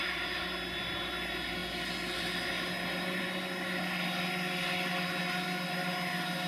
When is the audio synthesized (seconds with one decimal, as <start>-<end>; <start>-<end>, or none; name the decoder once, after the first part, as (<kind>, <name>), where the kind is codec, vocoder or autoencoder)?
none